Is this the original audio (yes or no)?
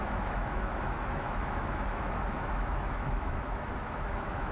no